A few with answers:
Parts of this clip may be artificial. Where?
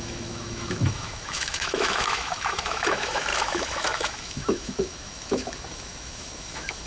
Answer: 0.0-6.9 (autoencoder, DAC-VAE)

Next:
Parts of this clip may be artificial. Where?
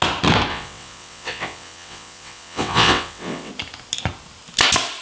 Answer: 0.5-3.5 (vocoder, WaveNeXt)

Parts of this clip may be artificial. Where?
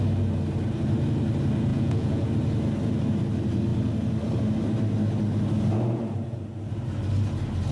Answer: 1.7-2.3 (vocoder, Vocos)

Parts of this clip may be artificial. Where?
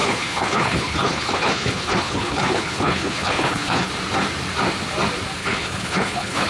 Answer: 0.0-3.9 (codec, HILCodec); 5.4-6.5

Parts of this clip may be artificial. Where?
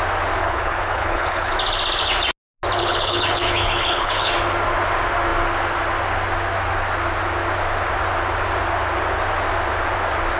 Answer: 0.4-1.5 (codec, HILCodec); 2.8-4.3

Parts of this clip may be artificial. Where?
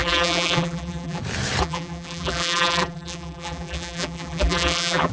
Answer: 0.0-1.2 (vocoder, BigVGAN v2); 1.6-5.1